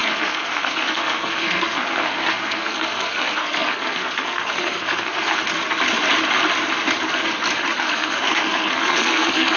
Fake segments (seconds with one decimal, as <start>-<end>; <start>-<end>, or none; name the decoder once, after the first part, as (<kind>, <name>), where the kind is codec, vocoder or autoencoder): 0.0-5.4 (codec, SNAC); 7.8-9.6